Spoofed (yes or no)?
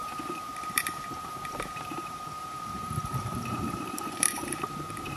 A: yes